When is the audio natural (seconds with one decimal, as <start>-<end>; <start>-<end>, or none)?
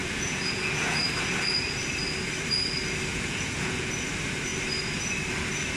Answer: 1.0-3.1; 3.9-5.8